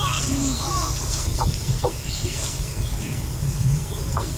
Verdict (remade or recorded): remade